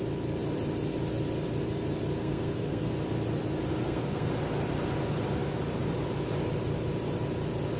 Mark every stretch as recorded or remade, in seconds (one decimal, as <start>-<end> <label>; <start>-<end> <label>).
0.0-2.2 recorded; 2.2-2.9 remade; 2.9-3.7 recorded; 3.7-4.3 remade; 4.3-7.8 recorded